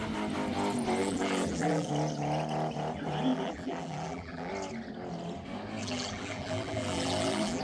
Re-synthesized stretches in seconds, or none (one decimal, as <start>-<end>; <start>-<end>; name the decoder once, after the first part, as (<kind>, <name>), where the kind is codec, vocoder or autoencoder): 1.0-1.9 (vocoder, BigVGAN v2); 3.3-4.5; 5.8-7.6